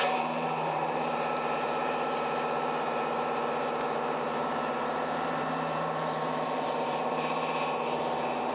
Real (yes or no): no